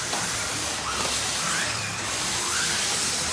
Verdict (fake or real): fake